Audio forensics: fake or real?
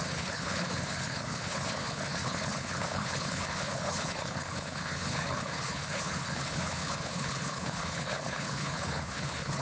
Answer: fake